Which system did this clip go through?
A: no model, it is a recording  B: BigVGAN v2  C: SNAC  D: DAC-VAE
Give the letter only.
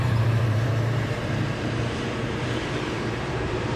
B